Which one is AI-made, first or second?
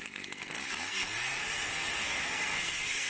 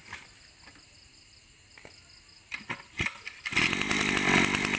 first